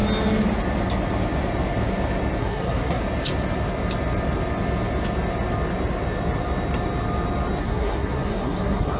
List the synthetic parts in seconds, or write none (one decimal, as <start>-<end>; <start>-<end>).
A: 2.4-3.0; 7.6-9.0